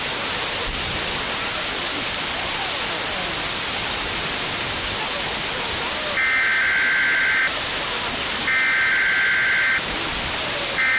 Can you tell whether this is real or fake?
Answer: real